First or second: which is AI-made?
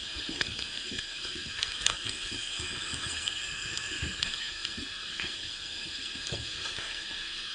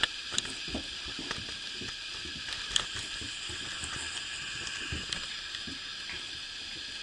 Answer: first